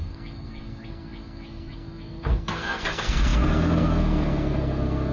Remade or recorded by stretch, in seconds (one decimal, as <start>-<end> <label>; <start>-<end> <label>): 0.0-5.1 remade